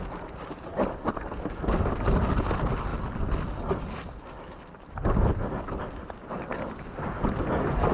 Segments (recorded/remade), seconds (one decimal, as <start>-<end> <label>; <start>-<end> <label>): 0.0-7.9 recorded

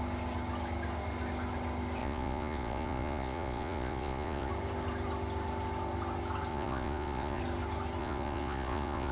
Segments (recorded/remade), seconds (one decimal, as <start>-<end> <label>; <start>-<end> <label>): 0.0-2.0 recorded; 2.0-4.5 remade; 4.5-6.5 recorded; 6.5-7.4 remade; 7.4-8.0 recorded; 8.0-9.1 remade

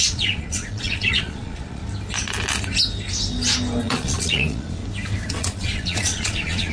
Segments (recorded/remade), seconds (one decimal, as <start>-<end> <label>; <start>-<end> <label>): 0.0-1.8 remade; 1.8-3.8 recorded; 3.8-4.8 remade; 4.8-5.3 recorded; 5.3-6.7 remade

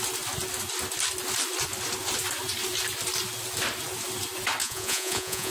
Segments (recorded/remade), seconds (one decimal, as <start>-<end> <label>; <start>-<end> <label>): 0.0-4.6 recorded; 4.6-5.5 remade

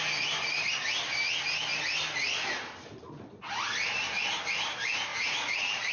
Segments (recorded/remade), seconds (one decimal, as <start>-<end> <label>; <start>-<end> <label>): 0.0-5.1 recorded; 5.1-5.9 remade